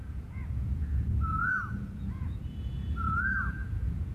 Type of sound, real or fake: fake